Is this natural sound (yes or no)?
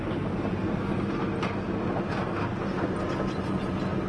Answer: yes